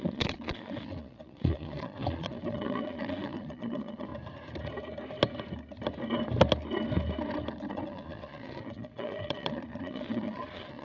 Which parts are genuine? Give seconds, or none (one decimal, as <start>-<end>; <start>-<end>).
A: 4.1-7.7

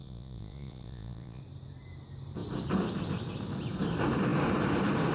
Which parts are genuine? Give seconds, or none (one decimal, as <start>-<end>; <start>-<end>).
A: 1.4-5.1

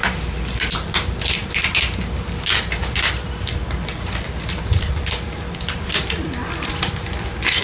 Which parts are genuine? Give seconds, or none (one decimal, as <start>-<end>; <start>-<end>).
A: 0.0-7.6

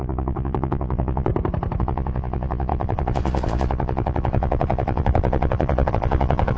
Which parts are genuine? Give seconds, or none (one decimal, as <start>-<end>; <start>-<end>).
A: 1.3-1.8

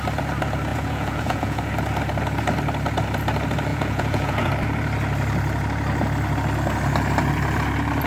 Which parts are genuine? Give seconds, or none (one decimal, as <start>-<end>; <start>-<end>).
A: 0.0-0.7; 1.7-3.7; 4.5-8.1

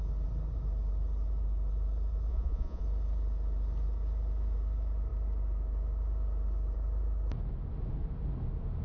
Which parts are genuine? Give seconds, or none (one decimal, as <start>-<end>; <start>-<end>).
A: 0.0-2.3; 2.8-8.8

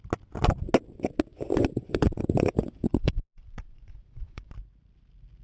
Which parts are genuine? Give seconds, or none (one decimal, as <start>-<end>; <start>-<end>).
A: 0.0-1.3; 4.5-5.4

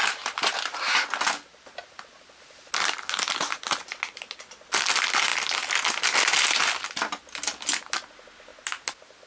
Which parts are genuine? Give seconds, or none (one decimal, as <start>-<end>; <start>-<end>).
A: 0.0-9.3